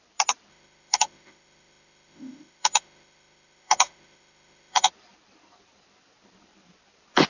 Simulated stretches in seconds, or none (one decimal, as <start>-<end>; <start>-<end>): 0.5-4.9